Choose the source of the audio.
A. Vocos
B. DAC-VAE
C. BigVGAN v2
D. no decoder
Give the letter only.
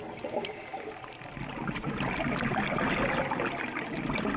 D